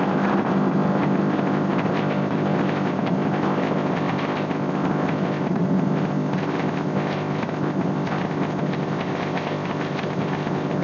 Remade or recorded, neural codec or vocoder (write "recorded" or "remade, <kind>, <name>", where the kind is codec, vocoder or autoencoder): remade, codec, ZipCodec